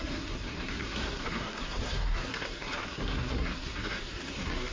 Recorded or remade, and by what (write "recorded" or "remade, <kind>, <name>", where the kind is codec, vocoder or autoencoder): remade, codec, SNAC